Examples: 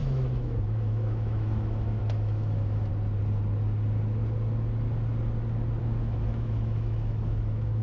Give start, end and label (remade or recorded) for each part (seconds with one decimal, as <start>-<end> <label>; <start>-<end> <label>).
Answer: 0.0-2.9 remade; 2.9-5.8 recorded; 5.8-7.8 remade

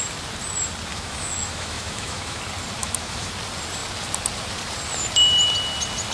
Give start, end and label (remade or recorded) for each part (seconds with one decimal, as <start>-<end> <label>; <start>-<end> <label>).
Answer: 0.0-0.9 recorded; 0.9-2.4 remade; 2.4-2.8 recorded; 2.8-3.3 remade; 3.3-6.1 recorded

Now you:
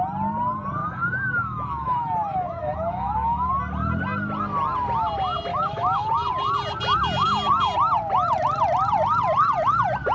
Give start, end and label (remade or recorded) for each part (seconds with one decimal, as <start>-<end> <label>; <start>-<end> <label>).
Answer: 0.0-0.8 recorded; 0.8-3.5 remade; 3.5-5.5 recorded; 5.5-6.1 remade; 6.1-10.1 recorded

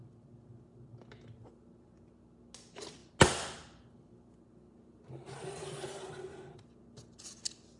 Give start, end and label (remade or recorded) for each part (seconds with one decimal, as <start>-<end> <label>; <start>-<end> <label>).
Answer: 0.0-7.8 recorded

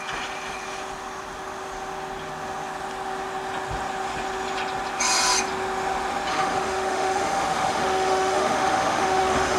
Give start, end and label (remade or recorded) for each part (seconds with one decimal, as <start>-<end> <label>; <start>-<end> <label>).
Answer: 0.0-6.3 recorded; 6.3-9.6 remade

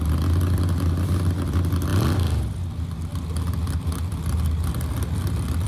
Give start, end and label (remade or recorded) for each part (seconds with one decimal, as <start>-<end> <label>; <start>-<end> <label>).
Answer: 0.0-5.7 recorded